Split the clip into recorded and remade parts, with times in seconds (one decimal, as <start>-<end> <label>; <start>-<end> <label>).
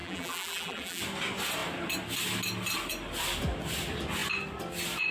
0.0-1.0 remade; 1.0-5.1 recorded